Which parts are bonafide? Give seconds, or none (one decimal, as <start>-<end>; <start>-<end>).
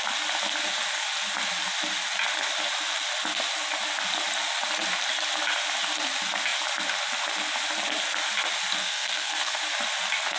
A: 0.0-8.8; 9.6-10.4